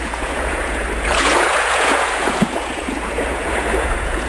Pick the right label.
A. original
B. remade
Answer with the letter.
B